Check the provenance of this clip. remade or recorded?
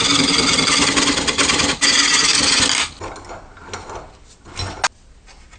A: recorded